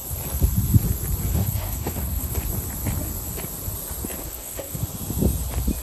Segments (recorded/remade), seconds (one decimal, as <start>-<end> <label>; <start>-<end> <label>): 0.0-1.3 recorded; 1.3-2.4 remade; 2.4-4.2 recorded; 4.2-4.8 remade; 4.8-5.8 recorded